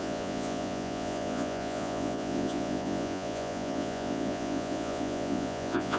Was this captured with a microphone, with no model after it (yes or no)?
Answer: no